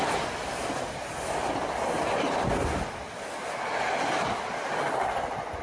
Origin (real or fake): real